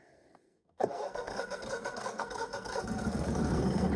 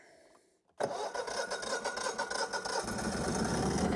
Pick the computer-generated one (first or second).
first